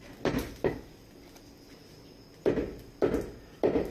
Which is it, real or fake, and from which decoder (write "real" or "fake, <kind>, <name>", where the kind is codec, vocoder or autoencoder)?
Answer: real